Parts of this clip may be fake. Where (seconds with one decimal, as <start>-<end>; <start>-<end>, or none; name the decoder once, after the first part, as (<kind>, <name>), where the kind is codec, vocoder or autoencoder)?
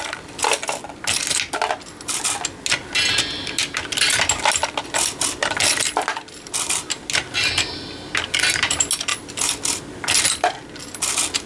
none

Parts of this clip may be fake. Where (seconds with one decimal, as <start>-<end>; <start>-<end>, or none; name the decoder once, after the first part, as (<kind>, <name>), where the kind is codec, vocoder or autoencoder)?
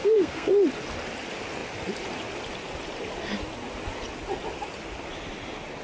0.0-0.5 (codec, SNAC)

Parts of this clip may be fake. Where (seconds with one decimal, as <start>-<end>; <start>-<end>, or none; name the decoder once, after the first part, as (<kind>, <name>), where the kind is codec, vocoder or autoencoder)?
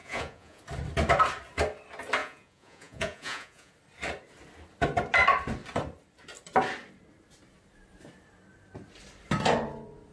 0.0-0.6 (vocoder, Vocos); 2.2-3.7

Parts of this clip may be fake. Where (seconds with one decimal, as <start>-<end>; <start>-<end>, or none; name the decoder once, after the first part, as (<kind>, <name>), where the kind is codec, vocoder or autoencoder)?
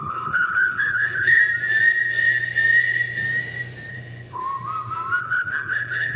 0.0-1.4 (codec, HILCodec); 3.9-4.4; 5.2-6.2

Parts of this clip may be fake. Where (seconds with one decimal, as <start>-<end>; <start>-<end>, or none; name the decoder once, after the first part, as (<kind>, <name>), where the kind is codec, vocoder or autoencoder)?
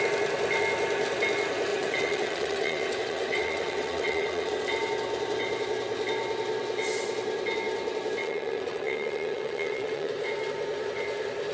1.7-4.5 (vocoder, WaveNeXt); 8.2-10.1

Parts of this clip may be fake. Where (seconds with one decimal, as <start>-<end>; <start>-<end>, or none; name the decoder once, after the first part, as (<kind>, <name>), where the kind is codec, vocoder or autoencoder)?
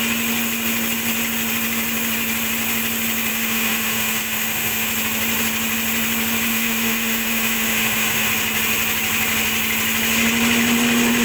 3.3-4.9 (autoencoder, DAC-VAE); 6.5-8.3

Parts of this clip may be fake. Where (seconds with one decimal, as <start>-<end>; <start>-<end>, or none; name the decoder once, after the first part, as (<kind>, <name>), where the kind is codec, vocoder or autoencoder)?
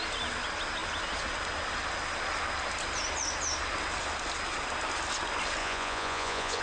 5.6-6.6 (vocoder, Vocos)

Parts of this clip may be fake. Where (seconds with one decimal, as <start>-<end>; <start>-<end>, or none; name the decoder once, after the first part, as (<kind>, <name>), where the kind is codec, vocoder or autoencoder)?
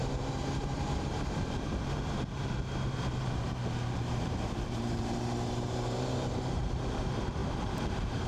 0.0-8.3 (vocoder, BigVGAN v2)